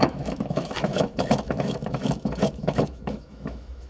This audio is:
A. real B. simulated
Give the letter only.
B